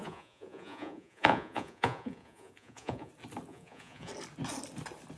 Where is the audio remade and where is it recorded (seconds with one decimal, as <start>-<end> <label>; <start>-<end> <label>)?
0.0-3.1 remade; 3.1-3.5 recorded; 3.5-4.1 remade; 4.1-5.2 recorded